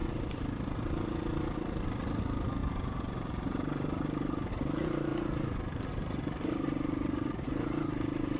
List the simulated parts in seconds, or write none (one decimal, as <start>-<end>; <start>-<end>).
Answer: 0.0-1.0; 2.6-4.5; 5.1-8.4